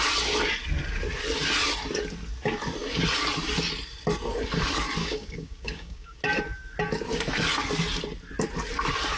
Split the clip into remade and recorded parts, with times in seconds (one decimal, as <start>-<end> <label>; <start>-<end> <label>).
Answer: 0.0-5.0 recorded; 5.0-6.2 remade; 6.2-9.2 recorded